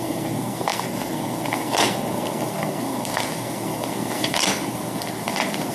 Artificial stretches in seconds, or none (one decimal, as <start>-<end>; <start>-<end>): 0.0-5.7